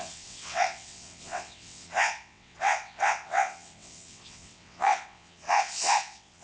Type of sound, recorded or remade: remade